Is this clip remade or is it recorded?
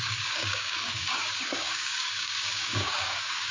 remade